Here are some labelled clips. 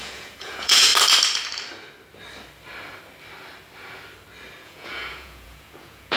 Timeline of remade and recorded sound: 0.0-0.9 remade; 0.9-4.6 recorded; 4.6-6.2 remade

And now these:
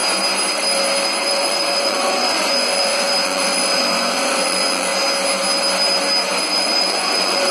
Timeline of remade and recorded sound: 0.0-1.2 recorded; 1.2-4.9 remade; 4.9-6.4 recorded; 6.4-7.5 remade

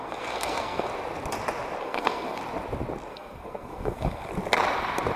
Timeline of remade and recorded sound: 0.0-0.9 remade; 0.9-1.8 recorded; 1.8-2.4 remade; 2.4-3.1 recorded; 3.1-4.3 remade; 4.3-5.2 recorded

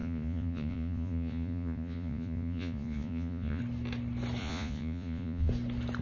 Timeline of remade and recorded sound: 0.0-3.6 remade; 3.6-4.4 recorded; 4.4-5.5 remade; 5.5-6.0 recorded